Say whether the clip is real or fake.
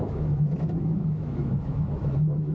fake